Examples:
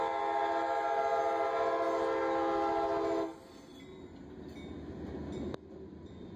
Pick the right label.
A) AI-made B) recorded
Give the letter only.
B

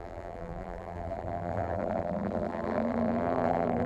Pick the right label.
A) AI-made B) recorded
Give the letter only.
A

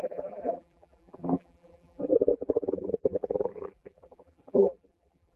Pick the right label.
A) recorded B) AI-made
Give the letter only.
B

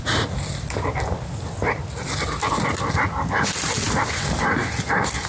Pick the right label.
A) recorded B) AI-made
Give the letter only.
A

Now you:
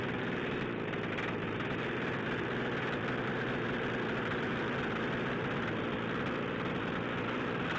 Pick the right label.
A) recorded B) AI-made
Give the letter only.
A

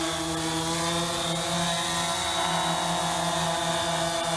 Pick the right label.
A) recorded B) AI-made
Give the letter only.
A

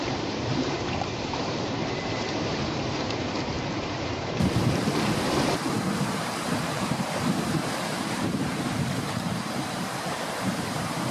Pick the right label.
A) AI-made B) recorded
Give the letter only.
A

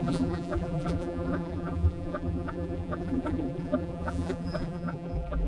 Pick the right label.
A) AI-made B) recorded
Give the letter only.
A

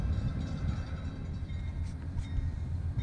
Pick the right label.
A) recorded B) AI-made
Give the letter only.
B